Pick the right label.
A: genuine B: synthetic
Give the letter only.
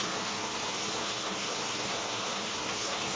B